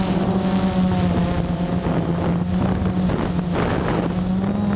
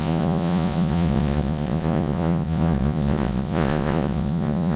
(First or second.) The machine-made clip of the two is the second